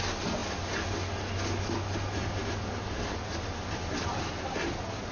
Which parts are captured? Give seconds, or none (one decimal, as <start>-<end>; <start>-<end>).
0.0-5.1